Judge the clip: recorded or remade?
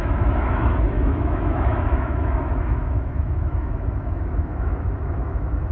remade